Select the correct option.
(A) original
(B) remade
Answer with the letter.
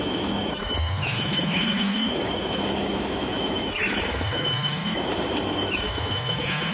B